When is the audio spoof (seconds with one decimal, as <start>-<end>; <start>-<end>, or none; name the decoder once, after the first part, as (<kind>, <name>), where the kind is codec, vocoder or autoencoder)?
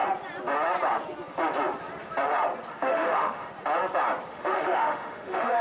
2.7-3.5 (autoencoder, DAC-VAE); 4.3-5.6